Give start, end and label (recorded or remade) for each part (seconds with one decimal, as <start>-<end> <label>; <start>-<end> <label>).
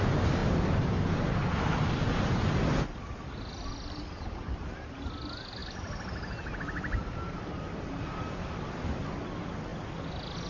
0.0-10.5 recorded